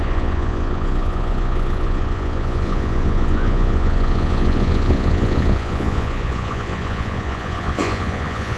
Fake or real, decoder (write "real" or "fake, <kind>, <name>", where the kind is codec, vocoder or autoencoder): fake, vocoder, Vocos